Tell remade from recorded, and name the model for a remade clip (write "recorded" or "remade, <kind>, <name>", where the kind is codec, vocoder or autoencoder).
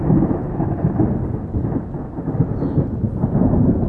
recorded